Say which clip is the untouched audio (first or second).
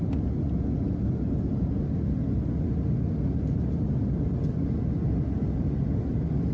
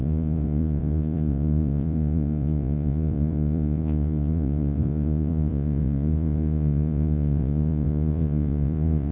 first